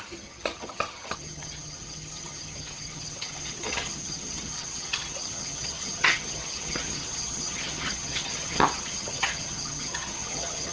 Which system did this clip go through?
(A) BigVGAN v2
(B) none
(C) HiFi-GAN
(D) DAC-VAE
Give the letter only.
C